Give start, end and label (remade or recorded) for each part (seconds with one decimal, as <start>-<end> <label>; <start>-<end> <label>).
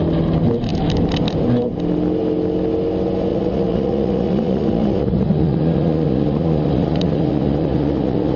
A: 0.0-3.3 recorded; 3.3-8.4 remade